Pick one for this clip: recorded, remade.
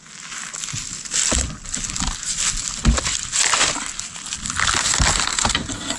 recorded